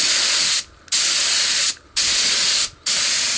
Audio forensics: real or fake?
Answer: real